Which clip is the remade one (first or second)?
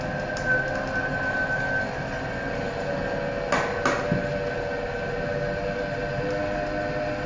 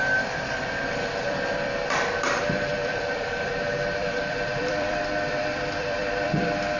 second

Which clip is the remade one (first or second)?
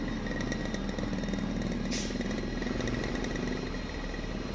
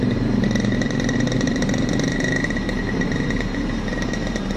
second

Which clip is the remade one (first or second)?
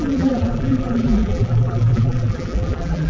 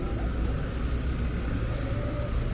first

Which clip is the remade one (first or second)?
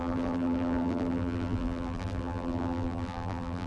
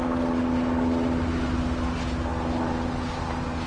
first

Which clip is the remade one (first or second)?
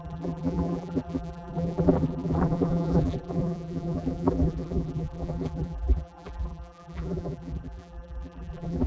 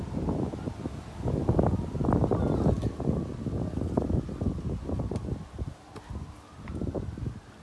first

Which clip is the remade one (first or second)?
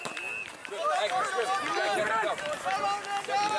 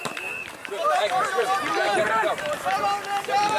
second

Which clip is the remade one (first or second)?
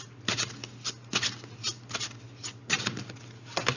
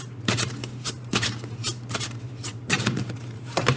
second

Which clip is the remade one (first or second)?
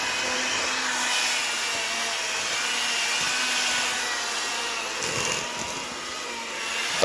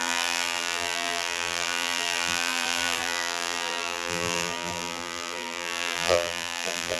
second